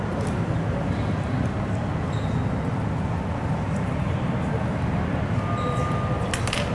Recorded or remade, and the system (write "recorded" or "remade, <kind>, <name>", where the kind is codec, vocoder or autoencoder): recorded